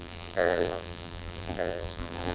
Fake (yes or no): yes